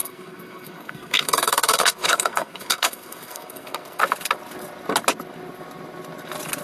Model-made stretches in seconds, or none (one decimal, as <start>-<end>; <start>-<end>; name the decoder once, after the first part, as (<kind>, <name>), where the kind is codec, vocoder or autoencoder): 0.0-4.0 (codec, SNAC)